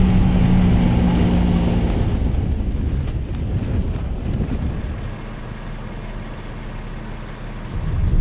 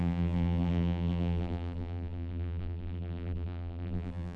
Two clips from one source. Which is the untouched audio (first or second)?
first